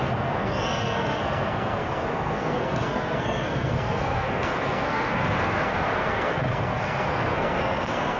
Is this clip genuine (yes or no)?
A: no